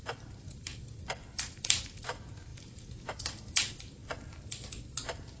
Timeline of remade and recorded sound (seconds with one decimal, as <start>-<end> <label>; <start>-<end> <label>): 0.0-0.7 remade; 0.7-1.5 recorded; 1.5-4.0 remade; 4.0-5.0 recorded; 5.0-5.4 remade